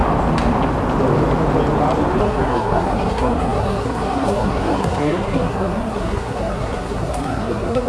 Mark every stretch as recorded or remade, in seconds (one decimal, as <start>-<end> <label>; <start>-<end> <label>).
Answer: 0.0-2.2 recorded; 2.2-7.9 remade

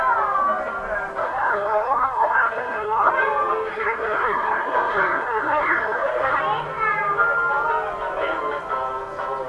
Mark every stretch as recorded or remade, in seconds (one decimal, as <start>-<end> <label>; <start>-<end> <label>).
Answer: 0.0-1.2 recorded; 1.2-3.1 remade; 3.1-3.7 recorded; 3.7-6.4 remade; 6.4-9.5 recorded

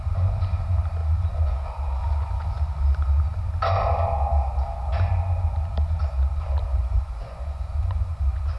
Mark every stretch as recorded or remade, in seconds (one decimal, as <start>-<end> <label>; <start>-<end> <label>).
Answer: 0.0-2.0 recorded; 2.0-2.6 remade; 2.6-6.7 recorded; 6.7-8.6 remade

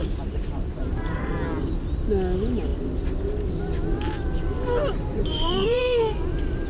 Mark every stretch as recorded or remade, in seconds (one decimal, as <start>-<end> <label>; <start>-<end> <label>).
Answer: 0.0-1.3 remade; 1.3-5.1 recorded; 5.1-5.8 remade; 5.8-6.7 recorded